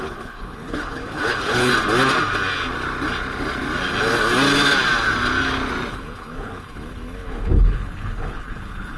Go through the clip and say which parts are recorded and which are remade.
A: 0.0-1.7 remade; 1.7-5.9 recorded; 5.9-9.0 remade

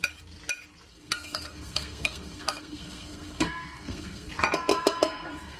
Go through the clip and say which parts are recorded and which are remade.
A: 0.0-0.9 recorded; 0.9-4.3 remade; 4.3-4.7 recorded; 4.7-5.6 remade

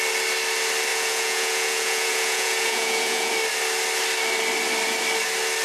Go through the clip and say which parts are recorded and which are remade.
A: 0.0-0.9 recorded; 0.9-3.3 remade; 3.3-5.6 recorded

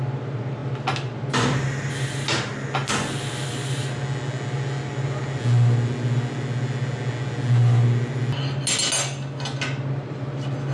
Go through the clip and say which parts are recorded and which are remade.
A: 0.0-10.7 recorded

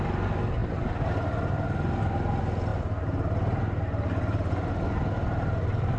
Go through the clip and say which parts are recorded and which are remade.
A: 0.0-6.0 recorded

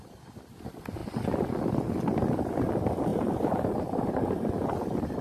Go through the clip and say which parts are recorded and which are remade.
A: 0.0-3.1 recorded; 3.1-4.4 remade; 4.4-5.2 recorded

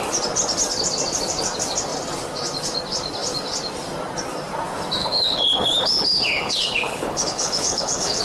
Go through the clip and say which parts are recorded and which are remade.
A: 0.0-5.0 recorded; 5.0-8.2 remade